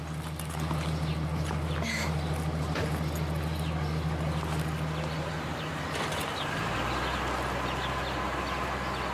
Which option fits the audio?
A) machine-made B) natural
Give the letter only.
B